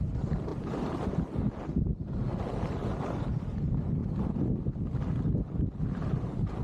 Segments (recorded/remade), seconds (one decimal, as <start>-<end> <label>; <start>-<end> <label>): 0.0-0.5 recorded; 0.5-1.1 remade; 1.1-4.0 recorded; 4.0-5.2 remade; 5.2-6.6 recorded